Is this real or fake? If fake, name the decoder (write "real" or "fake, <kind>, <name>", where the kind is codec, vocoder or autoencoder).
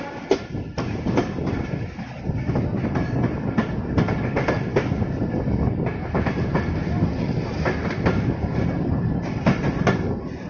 real